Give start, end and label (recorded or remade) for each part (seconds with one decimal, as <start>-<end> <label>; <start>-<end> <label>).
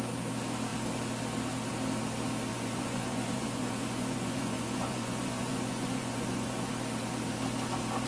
0.0-2.5 recorded; 2.5-6.7 remade; 6.7-8.1 recorded